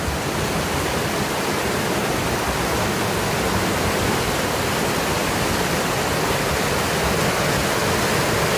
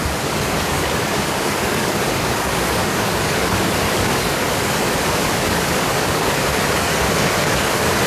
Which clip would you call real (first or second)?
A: first